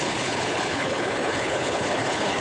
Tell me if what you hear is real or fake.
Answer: fake